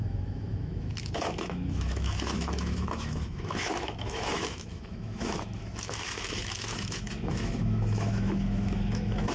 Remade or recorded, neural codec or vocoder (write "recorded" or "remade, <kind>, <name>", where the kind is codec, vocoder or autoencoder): remade, autoencoder, DAC-VAE